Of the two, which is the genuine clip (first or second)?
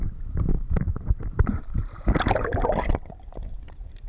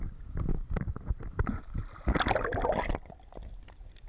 second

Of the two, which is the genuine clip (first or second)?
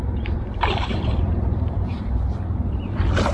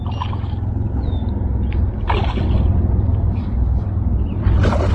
second